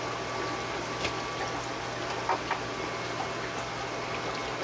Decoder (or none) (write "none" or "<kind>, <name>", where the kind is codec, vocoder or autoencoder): none